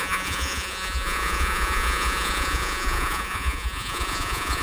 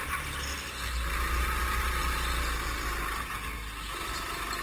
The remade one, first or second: first